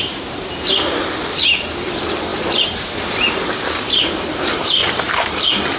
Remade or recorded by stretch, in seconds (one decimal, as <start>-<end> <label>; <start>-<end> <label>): 0.0-2.3 recorded; 2.3-3.1 remade; 3.1-4.8 recorded; 4.8-5.8 remade